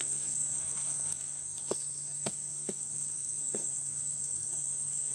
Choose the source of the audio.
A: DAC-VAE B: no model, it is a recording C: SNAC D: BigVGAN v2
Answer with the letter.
C